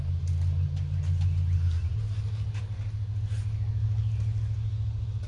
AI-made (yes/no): no